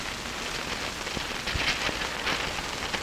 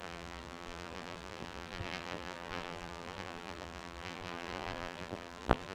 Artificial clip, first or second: second